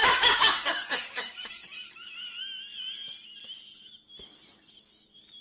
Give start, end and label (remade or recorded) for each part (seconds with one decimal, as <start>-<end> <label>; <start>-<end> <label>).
0.0-1.9 remade; 1.9-5.4 recorded